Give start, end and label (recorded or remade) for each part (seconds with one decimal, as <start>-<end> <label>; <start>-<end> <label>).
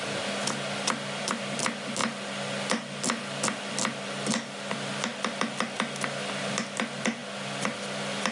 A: 0.0-8.3 recorded